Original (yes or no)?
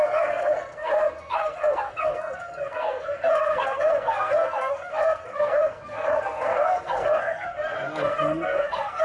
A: no